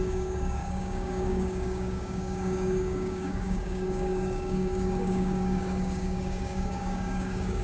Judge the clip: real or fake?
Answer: fake